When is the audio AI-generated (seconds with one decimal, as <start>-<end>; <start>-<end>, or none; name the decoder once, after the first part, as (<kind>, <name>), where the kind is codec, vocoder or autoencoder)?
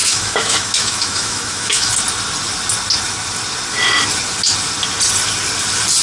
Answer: 0.0-1.9 (autoencoder, DAC-VAE)